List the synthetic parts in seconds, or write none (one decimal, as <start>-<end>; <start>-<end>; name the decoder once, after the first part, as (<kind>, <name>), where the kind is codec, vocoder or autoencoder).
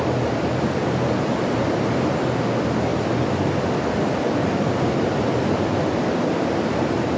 2.9-7.2 (vocoder, BigVGAN v2)